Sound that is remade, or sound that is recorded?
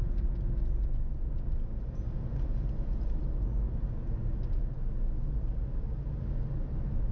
recorded